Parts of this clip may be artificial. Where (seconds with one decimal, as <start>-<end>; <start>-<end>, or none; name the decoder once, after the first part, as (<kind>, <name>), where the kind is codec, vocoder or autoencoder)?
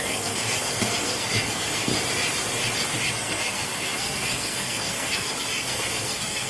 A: 0.0-1.9 (codec, SNAC); 3.1-6.5